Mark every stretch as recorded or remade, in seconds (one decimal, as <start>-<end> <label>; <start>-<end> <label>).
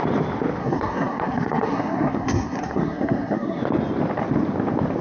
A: 0.0-0.6 recorded; 0.6-3.6 remade; 3.6-5.0 recorded